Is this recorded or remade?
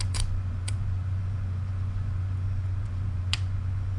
remade